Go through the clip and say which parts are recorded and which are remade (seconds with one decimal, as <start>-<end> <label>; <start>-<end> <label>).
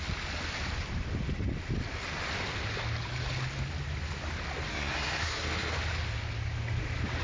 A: 0.0-4.7 recorded; 4.7-5.7 remade; 5.7-7.2 recorded